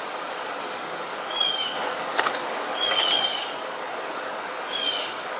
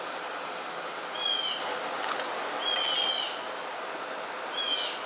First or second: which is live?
second